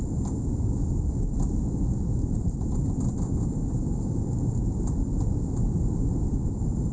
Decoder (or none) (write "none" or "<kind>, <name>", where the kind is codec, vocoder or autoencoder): vocoder, BigVGAN v2